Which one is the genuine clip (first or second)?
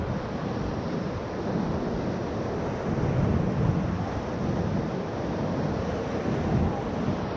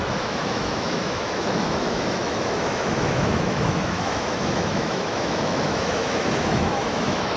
first